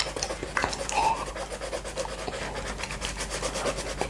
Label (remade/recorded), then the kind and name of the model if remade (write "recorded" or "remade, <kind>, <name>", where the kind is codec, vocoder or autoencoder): recorded